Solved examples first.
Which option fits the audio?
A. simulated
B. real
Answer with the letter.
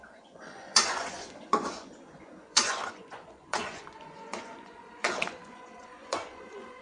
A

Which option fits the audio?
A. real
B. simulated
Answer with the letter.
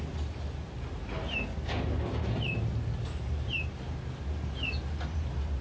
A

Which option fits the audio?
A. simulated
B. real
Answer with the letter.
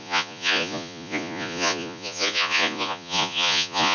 A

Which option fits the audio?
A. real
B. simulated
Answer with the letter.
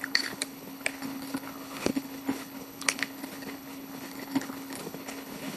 B